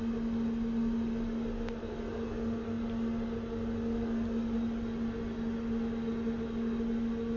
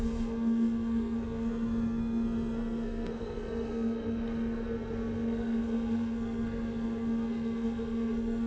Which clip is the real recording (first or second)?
first